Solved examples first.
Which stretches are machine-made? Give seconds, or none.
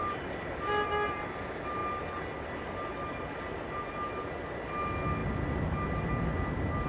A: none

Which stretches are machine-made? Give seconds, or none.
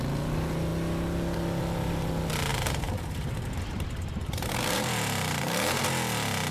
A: 2.5-5.8 (vocoder, BigVGAN v2)